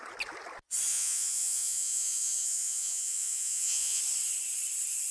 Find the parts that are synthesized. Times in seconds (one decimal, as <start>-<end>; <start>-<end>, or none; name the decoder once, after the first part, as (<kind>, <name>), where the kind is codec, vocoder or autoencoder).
0.9-4.0 (vocoder, Vocos)